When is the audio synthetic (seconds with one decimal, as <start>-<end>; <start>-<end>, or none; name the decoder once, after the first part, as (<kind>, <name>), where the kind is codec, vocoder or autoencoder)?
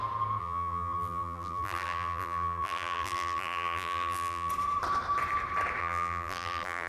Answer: 0.4-4.5 (vocoder, BigVGAN v2); 5.8-6.9